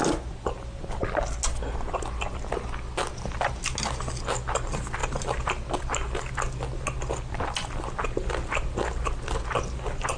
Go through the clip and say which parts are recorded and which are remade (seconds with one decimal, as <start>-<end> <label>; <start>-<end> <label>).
0.0-10.2 recorded